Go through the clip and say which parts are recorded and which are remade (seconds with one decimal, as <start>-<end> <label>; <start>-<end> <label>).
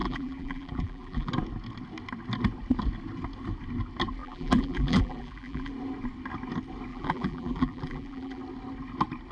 0.0-1.3 remade; 1.3-4.2 recorded; 4.2-5.7 remade; 5.7-6.9 recorded; 6.9-8.4 remade; 8.4-9.3 recorded